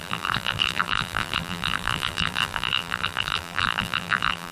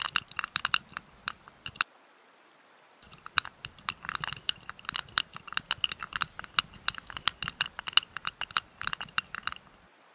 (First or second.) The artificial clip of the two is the first